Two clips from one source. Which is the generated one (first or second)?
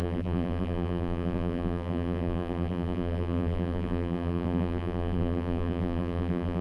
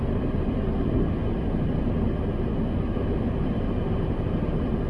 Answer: first